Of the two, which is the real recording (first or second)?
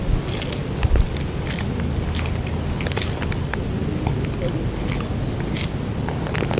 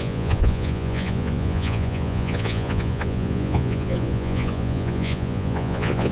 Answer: first